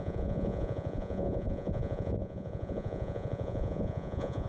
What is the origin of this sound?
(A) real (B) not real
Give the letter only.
B